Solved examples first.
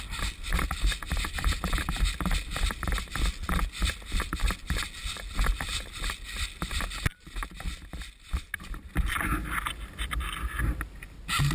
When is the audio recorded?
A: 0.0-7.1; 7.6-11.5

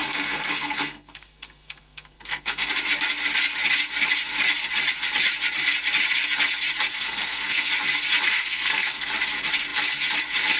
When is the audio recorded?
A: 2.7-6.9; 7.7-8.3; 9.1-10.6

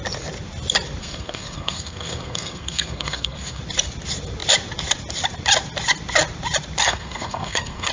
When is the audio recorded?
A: 0.0-1.0; 3.6-6.8

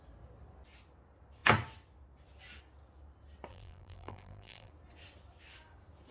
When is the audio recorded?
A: 0.0-3.5; 4.7-6.1

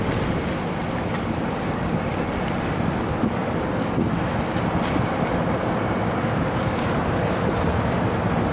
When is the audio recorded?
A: 0.0-8.5

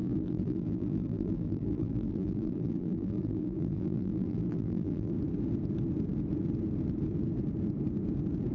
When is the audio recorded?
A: 5.1-8.5

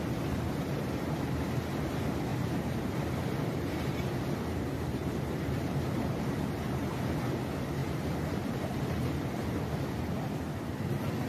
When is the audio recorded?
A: 0.0-2.3; 4.1-5.0; 6.8-7.8; 8.7-11.3

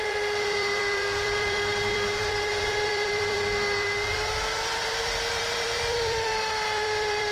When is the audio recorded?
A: none